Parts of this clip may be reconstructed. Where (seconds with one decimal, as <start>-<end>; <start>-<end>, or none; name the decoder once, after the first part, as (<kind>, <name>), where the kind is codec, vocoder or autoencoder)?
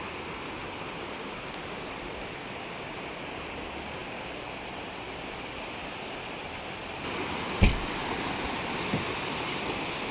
none